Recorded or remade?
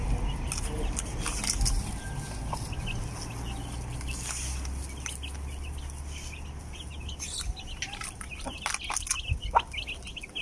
recorded